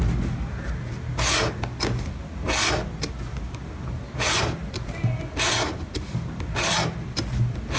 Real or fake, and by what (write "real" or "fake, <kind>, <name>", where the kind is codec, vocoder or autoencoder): real